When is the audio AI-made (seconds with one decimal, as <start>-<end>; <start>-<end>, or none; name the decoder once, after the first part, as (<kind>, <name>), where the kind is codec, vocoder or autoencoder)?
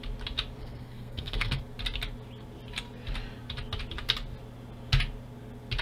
0.6-1.6 (codec, SNAC)